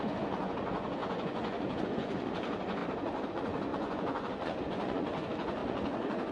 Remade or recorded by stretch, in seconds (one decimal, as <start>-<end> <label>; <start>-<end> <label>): 0.0-2.8 remade; 2.8-3.3 recorded; 3.3-6.3 remade